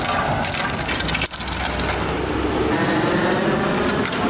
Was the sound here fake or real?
real